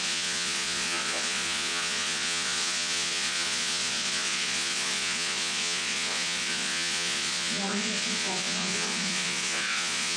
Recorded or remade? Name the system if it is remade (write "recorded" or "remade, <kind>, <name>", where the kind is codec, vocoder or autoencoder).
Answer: remade, vocoder, Vocos